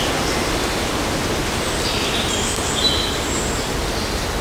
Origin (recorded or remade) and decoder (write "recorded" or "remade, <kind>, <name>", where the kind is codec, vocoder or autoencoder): recorded